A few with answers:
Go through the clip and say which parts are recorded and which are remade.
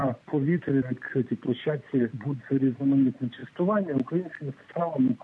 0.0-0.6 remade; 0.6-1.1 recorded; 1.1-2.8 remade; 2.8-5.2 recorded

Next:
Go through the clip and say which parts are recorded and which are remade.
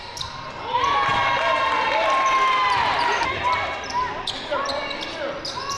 0.0-5.8 recorded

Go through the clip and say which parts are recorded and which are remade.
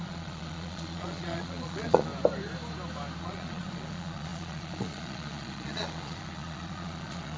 0.0-2.1 remade; 2.1-3.2 recorded; 3.2-7.4 remade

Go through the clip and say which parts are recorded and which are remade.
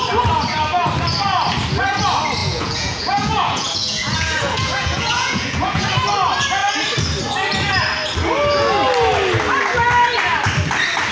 0.0-2.4 recorded; 2.4-5.8 remade; 5.8-11.1 recorded